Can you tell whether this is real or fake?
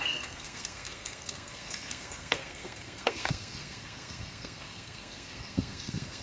fake